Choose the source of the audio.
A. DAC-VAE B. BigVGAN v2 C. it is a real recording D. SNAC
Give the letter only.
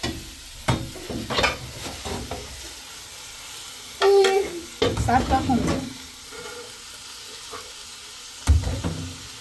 C